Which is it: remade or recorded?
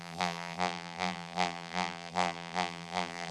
remade